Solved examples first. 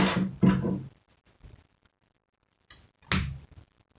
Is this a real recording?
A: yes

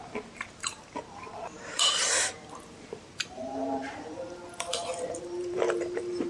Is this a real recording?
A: no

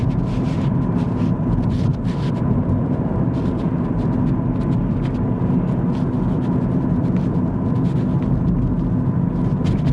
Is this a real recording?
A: yes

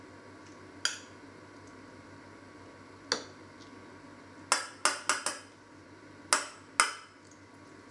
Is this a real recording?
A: yes